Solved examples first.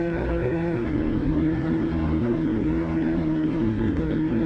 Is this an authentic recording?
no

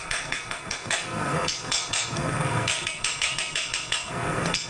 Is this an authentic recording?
no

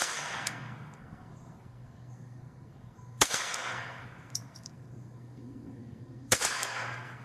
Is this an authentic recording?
no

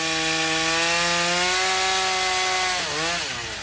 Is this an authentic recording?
yes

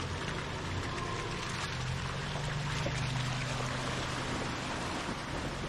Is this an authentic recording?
yes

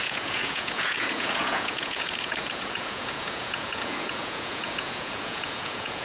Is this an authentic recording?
no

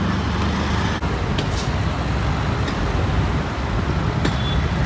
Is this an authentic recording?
yes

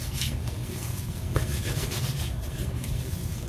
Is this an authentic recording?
no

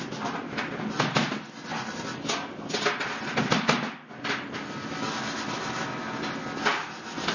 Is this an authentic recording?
yes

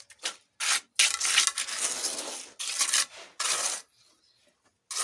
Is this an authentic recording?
yes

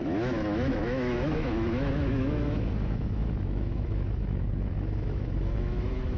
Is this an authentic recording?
no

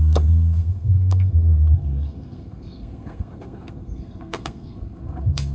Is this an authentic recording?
no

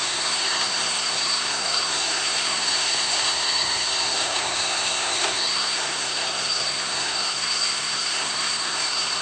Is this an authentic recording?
no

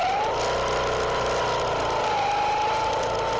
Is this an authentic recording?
yes